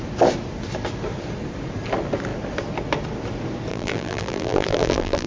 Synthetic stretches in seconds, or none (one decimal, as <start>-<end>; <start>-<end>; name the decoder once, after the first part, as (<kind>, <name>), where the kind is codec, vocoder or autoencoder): 3.7-5.3 (vocoder, BigVGAN v2)